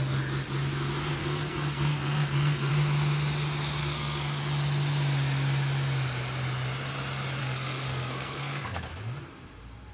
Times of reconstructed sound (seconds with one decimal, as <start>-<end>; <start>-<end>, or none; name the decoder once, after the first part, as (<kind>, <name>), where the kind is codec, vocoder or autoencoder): 1.2-2.7 (codec, SNAC); 3.8-4.4; 7.4-8.9